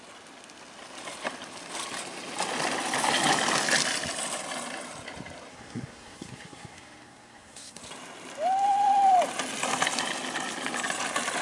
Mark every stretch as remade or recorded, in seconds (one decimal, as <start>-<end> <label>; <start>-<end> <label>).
0.0-5.5 recorded; 5.5-7.8 remade; 7.8-11.4 recorded